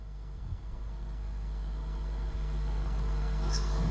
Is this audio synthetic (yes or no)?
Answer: yes